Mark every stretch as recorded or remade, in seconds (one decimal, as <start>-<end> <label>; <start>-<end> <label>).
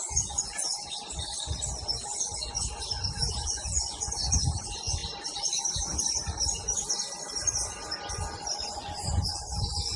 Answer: 0.0-5.0 remade; 5.0-8.1 recorded; 8.1-10.0 remade